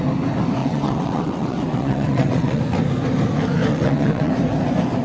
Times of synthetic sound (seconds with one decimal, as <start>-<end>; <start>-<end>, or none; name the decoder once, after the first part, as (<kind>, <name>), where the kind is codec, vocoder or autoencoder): 0.6-2.6 (vocoder, WaveNeXt); 3.7-4.3